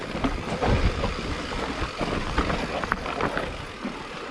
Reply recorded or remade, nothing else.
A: recorded